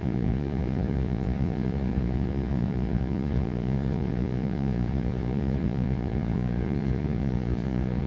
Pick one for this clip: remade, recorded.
remade